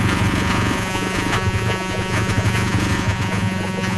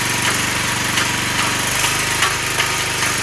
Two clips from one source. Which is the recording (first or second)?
second